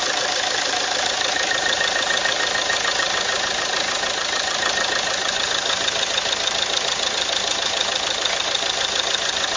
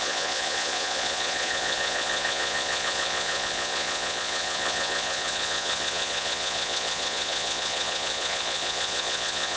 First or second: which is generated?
second